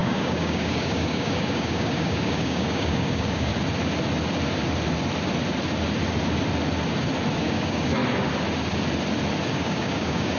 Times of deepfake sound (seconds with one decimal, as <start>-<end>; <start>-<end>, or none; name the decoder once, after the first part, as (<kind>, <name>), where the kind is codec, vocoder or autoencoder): 0.0-3.5 (codec, DAC); 7.4-8.0; 9.6-10.4